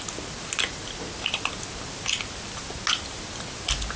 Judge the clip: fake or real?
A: real